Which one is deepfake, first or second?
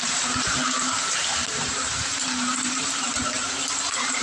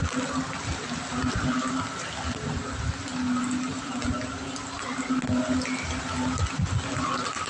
first